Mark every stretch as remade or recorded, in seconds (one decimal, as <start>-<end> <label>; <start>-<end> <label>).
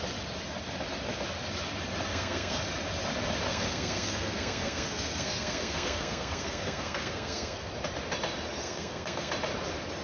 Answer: 0.0-2.1 recorded; 2.1-2.6 remade; 2.6-3.5 recorded; 3.5-7.7 remade; 7.7-8.6 recorded; 8.6-9.3 remade; 9.3-10.0 recorded